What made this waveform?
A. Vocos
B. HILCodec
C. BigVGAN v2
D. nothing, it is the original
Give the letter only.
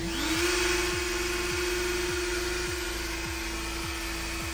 D